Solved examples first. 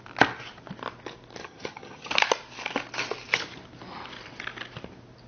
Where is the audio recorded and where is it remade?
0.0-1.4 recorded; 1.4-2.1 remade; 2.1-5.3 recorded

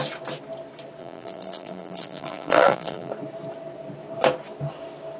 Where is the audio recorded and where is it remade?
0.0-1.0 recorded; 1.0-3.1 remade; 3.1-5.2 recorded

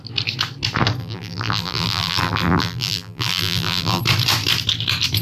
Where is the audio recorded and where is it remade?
0.0-1.0 recorded; 1.0-4.0 remade; 4.0-5.2 recorded

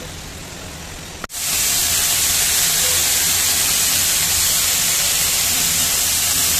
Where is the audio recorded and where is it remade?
0.0-6.6 recorded

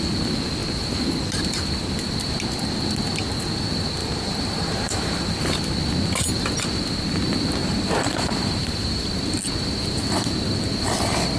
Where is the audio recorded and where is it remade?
0.0-4.0 recorded; 4.0-5.6 remade; 5.6-7.6 recorded; 7.6-9.1 remade; 9.1-11.4 recorded